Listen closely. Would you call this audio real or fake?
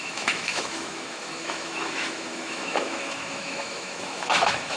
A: fake